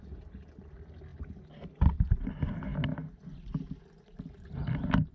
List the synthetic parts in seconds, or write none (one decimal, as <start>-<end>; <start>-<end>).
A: none